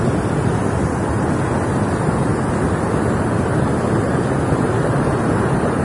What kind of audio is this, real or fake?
real